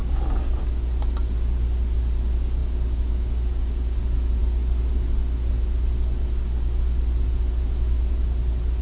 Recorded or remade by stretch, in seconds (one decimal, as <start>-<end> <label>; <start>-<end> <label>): 0.0-8.8 recorded